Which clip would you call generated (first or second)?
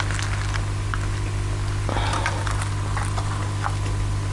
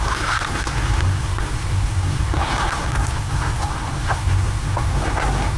second